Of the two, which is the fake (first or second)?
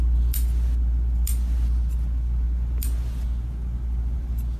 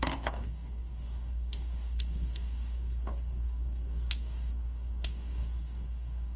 second